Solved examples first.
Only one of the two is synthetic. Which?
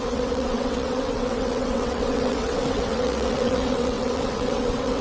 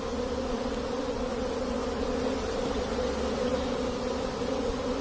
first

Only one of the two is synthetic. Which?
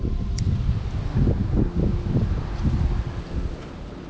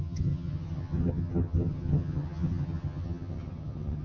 second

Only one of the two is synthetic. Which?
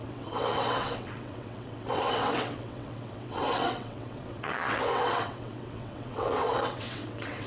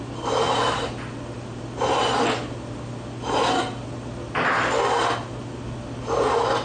first